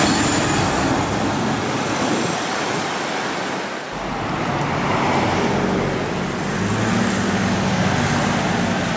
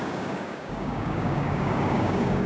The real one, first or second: first